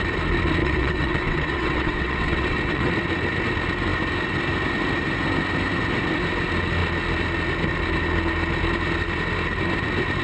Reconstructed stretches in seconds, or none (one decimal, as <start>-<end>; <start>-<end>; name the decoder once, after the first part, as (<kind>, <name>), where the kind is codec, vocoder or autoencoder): 0.6-2.9 (vocoder, WaveNeXt)